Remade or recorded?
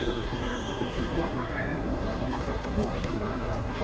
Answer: remade